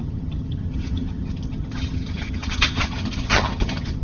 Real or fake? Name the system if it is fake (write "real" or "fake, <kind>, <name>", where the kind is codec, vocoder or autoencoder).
fake, vocoder, HiFi-GAN